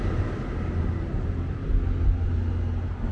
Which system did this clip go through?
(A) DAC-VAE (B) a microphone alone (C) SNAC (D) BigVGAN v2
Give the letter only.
B